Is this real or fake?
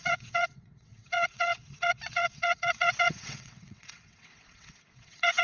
fake